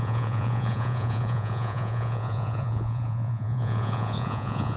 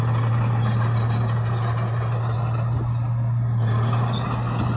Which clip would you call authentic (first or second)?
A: second